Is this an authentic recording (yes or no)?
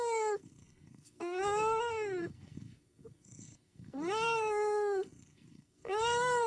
no